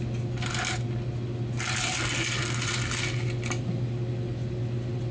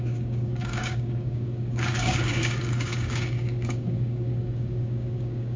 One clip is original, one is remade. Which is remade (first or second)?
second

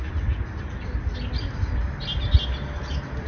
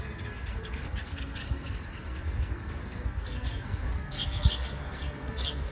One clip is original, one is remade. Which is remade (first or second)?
second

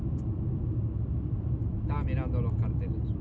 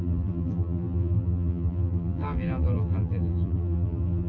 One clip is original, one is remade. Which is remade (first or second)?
second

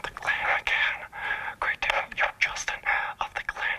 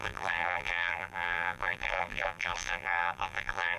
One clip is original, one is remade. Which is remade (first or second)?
second